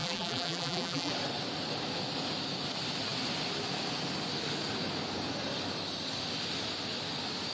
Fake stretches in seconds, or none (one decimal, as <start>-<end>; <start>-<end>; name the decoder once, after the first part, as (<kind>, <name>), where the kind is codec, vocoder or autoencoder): 0.0-1.1 (vocoder, BigVGAN v2)